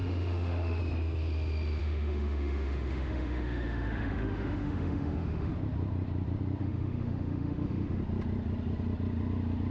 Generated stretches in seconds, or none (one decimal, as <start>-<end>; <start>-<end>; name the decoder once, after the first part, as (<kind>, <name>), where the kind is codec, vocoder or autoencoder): 0.0-0.8 (autoencoder, DAC-VAE); 1.8-5.5; 6.6-8.0